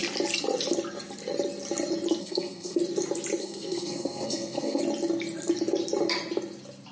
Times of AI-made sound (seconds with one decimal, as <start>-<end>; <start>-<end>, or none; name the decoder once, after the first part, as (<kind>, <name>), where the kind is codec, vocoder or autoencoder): 2.2-2.8 (codec, SNAC); 3.4-4.8